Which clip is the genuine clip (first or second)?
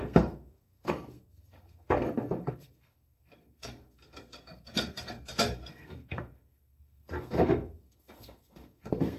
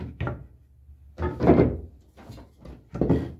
second